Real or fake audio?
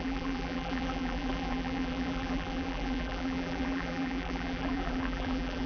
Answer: fake